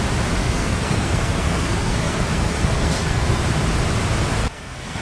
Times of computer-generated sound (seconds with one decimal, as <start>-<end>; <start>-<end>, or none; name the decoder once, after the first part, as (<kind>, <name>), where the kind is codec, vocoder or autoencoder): 0.4-3.4 (codec, SNAC); 4.4-5.0